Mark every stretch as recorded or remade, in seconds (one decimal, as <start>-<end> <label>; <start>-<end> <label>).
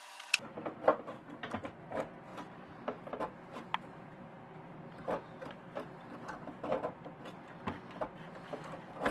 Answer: 0.0-9.1 recorded